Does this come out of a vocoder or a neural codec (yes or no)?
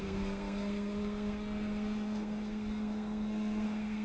yes